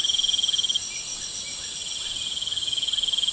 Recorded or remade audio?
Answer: recorded